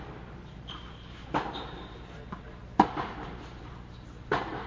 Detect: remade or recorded recorded